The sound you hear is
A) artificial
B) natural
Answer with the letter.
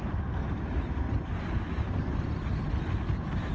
B